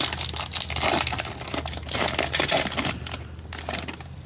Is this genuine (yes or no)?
yes